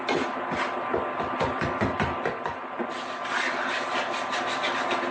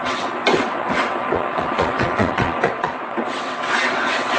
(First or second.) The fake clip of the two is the second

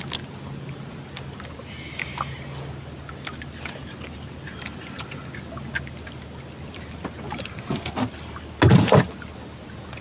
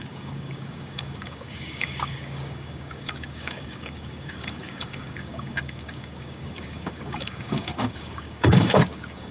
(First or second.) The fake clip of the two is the second